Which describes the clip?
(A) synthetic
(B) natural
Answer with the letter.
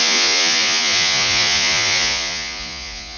A